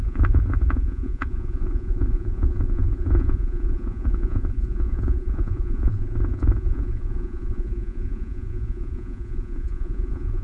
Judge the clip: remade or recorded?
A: remade